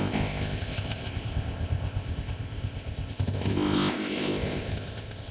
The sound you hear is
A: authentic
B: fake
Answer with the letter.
B